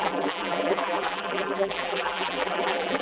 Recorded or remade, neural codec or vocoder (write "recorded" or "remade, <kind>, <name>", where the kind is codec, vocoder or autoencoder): remade, vocoder, BigVGAN v2